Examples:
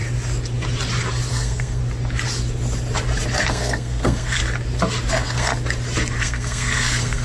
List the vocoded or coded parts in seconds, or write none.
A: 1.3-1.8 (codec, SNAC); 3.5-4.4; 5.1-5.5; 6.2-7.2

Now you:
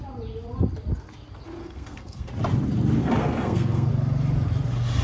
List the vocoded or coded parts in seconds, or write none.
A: 1.6-2.3 (codec, SNAC); 3.0-3.9

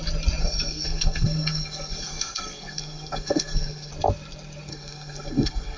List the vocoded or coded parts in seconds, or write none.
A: 0.4-3.9 (codec, SNAC); 4.7-5.8

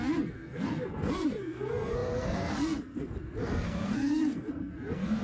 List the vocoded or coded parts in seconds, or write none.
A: 0.0-5.2 (codec, SNAC)

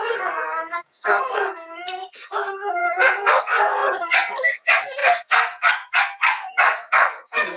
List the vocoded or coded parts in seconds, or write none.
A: 0.0-7.6 (codec, SNAC)

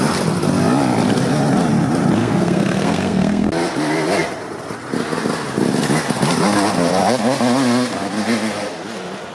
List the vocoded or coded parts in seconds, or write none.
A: 2.2-3.5 (codec, SNAC)